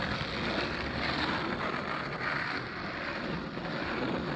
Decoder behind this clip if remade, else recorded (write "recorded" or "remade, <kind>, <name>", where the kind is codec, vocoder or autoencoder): recorded